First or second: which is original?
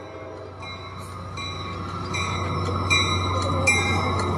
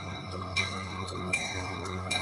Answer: first